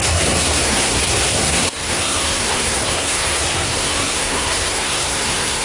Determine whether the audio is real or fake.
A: fake